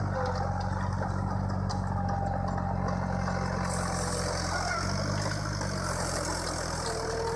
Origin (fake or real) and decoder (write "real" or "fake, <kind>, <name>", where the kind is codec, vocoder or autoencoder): real